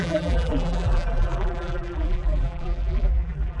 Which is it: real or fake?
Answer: fake